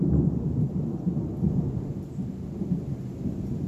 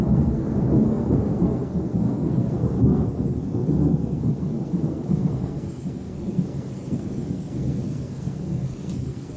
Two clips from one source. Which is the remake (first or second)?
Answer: second